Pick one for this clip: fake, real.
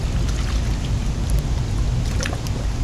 real